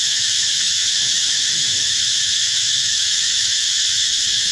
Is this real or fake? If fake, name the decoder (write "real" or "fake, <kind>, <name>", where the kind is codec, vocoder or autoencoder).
fake, autoencoder, DAC-VAE